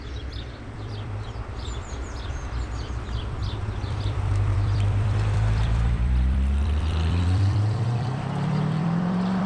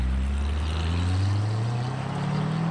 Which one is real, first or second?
second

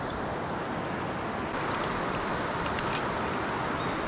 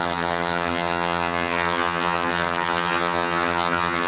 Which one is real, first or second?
first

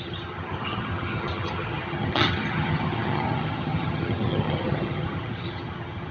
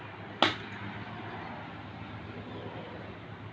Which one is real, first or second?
second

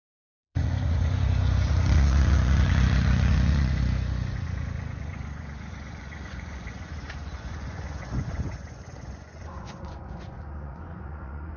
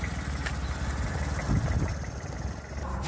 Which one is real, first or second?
second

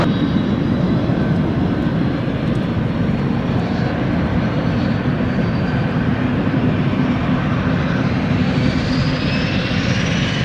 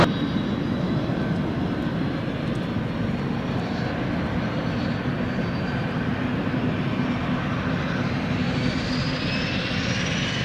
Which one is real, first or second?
second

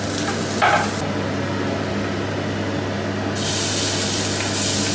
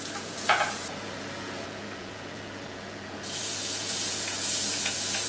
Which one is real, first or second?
first